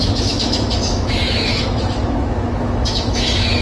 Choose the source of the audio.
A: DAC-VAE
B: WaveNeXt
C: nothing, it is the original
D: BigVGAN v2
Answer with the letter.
A